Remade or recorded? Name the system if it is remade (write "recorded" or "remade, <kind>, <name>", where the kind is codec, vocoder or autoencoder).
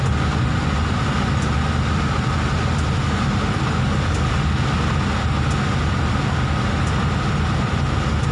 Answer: recorded